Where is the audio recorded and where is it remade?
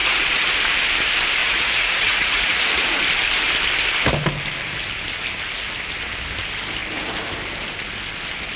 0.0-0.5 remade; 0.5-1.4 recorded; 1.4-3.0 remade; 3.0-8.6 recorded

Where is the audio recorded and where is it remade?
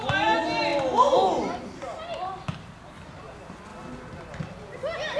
0.0-5.2 recorded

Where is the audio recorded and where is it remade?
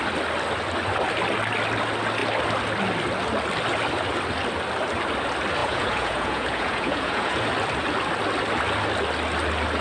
0.0-5.6 recorded; 5.6-7.4 remade; 7.4-9.8 recorded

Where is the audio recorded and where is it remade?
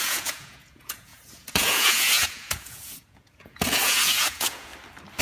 0.0-4.7 remade; 4.7-5.2 recorded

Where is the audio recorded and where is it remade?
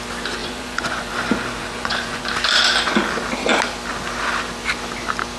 0.0-0.4 recorded; 0.4-1.1 remade; 1.1-1.6 recorded; 1.6-2.2 remade; 2.2-5.4 recorded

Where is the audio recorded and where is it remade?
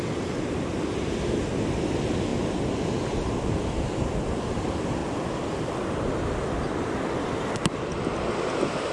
0.0-8.9 recorded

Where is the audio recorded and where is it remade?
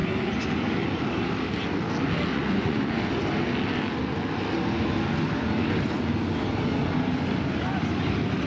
0.0-2.3 recorded; 2.3-2.9 remade; 2.9-8.5 recorded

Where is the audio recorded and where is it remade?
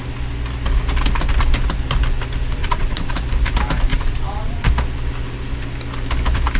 0.0-2.6 recorded; 2.6-3.1 remade; 3.1-3.9 recorded; 3.9-4.7 remade; 4.7-6.6 recorded